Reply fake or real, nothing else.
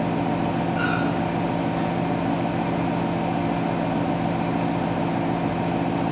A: real